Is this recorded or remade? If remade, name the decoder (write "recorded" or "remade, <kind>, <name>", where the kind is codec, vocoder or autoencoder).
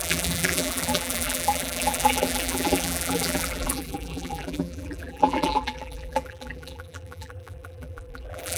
remade, vocoder, BigVGAN v2